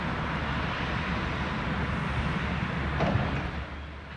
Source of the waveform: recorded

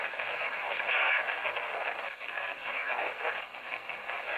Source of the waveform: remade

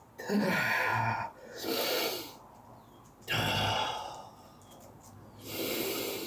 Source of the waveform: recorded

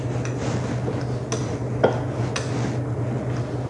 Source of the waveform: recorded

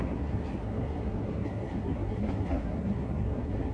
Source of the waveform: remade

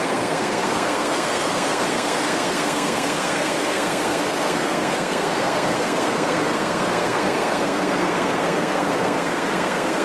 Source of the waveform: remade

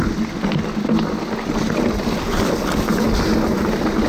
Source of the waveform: recorded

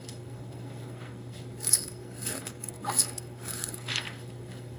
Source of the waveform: remade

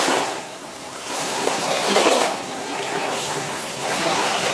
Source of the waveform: remade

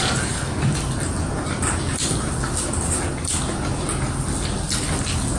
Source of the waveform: recorded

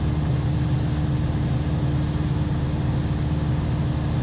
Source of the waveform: recorded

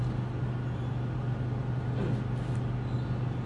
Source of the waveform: recorded